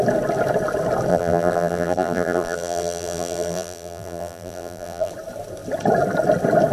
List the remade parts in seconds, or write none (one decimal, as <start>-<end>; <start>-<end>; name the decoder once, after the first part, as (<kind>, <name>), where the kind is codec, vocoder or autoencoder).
1.1-5.1 (vocoder, BigVGAN v2)